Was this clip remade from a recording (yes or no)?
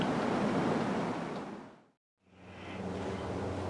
no